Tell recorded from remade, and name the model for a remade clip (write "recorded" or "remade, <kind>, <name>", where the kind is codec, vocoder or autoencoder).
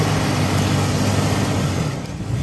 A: recorded